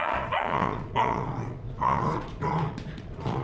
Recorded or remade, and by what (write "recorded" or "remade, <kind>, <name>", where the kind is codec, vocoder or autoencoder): remade, vocoder, Vocos